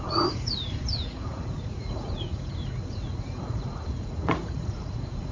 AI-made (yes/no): yes